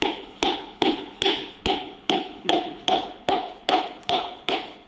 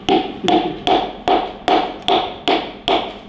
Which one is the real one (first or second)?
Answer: second